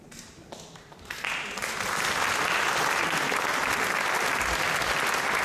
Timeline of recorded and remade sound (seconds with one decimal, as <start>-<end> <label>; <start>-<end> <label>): 0.0-5.4 recorded